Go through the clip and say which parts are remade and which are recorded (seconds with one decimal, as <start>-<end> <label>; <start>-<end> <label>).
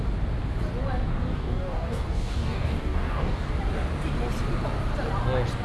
0.0-1.1 recorded; 1.1-3.5 remade; 3.5-5.6 recorded